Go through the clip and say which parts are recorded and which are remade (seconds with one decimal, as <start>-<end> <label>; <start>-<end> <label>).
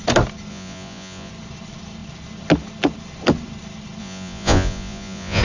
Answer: 0.0-0.5 recorded; 0.5-1.3 remade; 1.3-4.0 recorded; 4.0-5.4 remade